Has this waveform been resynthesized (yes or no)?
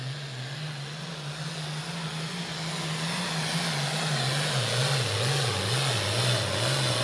no